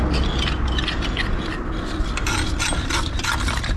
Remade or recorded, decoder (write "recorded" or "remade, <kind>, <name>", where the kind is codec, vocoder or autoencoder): recorded